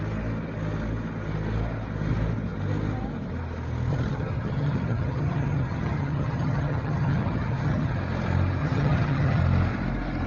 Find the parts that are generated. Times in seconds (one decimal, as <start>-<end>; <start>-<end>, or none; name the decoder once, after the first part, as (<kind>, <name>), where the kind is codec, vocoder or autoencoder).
3.9-8.0 (vocoder, HiFi-GAN); 8.6-9.4